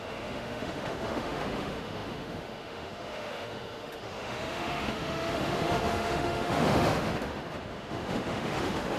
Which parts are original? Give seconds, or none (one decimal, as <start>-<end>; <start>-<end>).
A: none